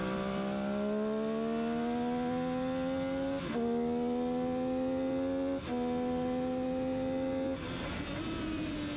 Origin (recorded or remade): recorded